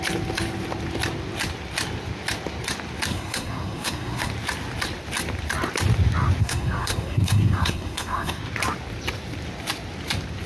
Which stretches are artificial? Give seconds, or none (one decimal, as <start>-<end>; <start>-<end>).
3.1-4.3; 6.4-8.4